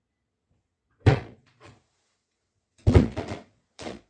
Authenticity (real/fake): fake